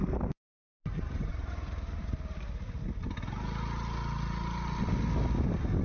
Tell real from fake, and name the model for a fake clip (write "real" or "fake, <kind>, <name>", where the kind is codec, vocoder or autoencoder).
real